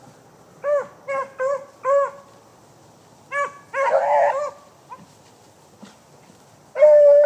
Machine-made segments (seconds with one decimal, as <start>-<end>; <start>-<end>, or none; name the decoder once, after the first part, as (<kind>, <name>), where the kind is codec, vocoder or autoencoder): none